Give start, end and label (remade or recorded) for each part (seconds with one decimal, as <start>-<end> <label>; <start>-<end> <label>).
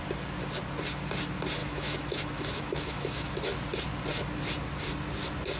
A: 0.0-1.6 recorded; 1.6-3.3 remade; 3.3-5.6 recorded